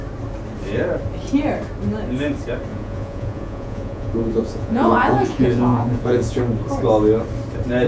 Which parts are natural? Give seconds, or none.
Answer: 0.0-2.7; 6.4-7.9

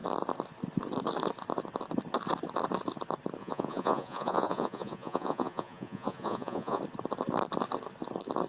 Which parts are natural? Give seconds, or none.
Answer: 0.0-3.4; 6.8-8.5

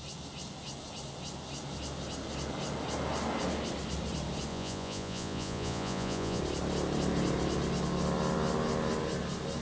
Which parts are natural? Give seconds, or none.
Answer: 0.0-4.5; 6.4-9.6

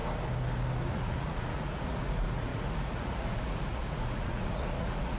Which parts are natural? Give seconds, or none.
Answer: 0.0-0.9

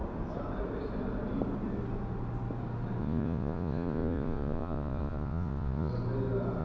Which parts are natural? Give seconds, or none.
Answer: 0.0-3.0; 5.9-6.6

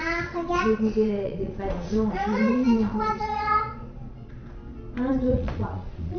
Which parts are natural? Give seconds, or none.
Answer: 4.4-5.1

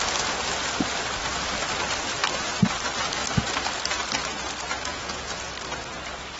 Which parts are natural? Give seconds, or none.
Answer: 0.0-4.9; 5.4-6.4